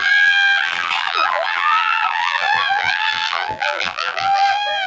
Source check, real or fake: fake